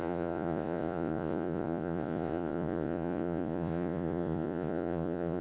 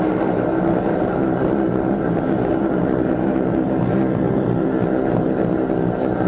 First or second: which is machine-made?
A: first